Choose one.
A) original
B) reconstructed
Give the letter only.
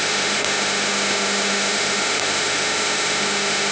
B